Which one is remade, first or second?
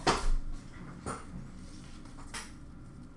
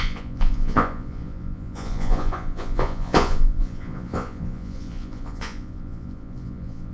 second